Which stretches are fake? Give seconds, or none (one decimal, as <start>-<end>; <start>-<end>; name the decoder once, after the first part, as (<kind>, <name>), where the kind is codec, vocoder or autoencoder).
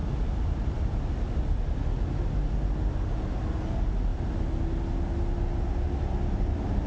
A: none